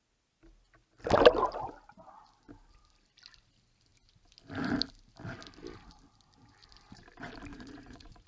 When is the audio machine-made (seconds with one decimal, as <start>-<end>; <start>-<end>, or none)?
7.5-8.3